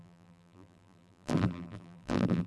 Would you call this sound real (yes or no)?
no